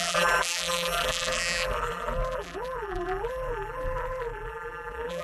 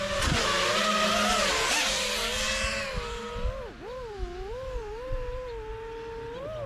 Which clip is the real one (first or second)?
second